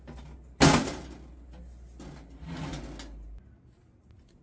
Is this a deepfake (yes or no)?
no